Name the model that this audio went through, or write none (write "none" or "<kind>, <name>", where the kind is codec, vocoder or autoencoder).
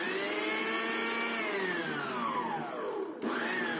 none